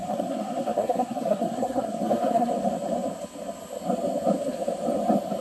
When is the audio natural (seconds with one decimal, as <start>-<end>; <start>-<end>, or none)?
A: 2.5-5.4